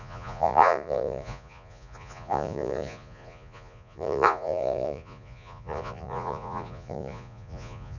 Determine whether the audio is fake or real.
fake